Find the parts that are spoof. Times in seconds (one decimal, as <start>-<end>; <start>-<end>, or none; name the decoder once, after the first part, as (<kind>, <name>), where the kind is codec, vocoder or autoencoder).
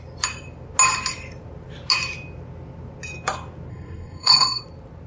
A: 3.7-4.6 (codec, SNAC)